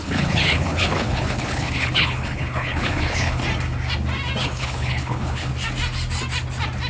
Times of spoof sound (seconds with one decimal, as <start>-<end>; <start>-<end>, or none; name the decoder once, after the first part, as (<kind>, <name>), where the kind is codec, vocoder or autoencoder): 0.0-3.4 (codec, HILCodec); 4.4-5.5